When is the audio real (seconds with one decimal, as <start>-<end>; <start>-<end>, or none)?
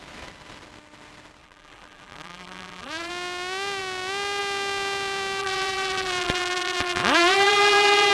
0.0-1.4; 3.1-5.4